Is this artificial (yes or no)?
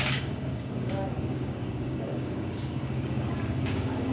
yes